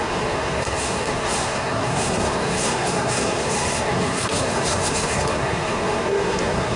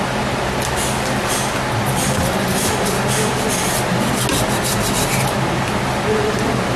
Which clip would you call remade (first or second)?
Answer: first